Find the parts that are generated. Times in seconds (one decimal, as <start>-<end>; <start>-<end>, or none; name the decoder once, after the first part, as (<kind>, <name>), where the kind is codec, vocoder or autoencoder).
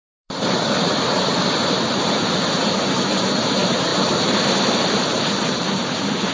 0.0-6.3 (vocoder, BigVGAN v2)